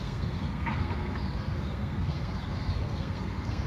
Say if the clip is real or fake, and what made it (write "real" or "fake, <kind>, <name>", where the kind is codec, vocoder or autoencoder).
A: fake, codec, SNAC